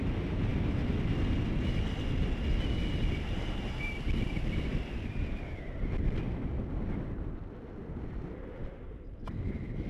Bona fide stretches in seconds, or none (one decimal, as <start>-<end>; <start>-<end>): 0.0-9.9